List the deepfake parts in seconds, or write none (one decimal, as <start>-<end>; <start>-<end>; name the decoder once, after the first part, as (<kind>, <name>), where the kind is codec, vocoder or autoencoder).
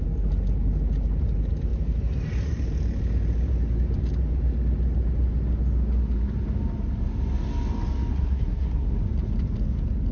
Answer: 8.1-9.0 (codec, SNAC)